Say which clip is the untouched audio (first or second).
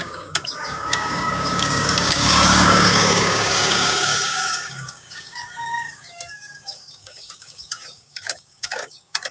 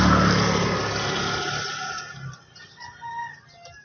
second